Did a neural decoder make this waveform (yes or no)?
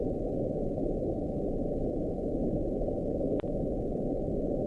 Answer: no